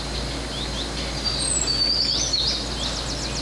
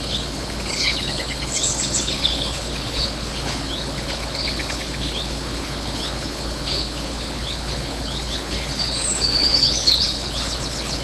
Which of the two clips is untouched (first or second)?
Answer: first